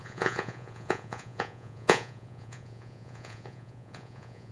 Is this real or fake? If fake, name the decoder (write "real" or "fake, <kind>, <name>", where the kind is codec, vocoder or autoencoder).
fake, vocoder, Vocos